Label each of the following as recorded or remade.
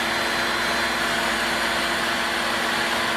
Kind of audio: recorded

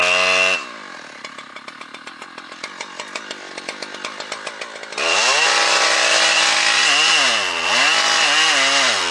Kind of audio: recorded